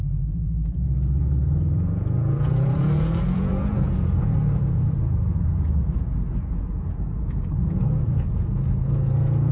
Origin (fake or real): fake